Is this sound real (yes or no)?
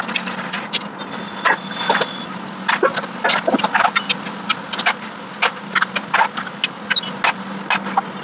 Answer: yes